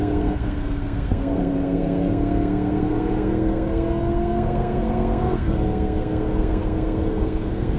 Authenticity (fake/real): fake